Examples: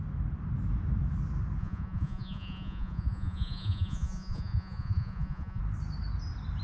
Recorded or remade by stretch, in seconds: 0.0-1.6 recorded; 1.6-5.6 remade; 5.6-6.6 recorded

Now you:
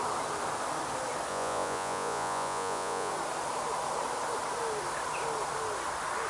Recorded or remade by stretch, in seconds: 0.0-1.3 recorded; 1.3-3.1 remade; 3.1-6.3 recorded

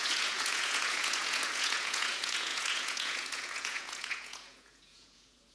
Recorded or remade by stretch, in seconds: 0.0-5.5 remade

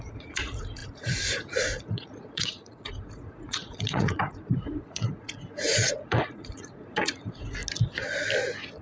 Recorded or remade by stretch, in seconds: 0.0-7.6 remade; 7.6-8.8 recorded

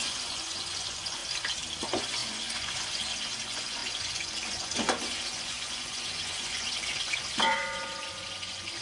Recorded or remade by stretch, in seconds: 0.0-1.2 remade; 1.2-1.8 recorded; 1.8-8.8 remade

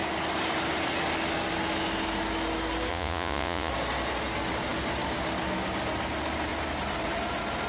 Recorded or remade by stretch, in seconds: 0.0-2.9 recorded; 2.9-3.7 remade; 3.7-7.7 recorded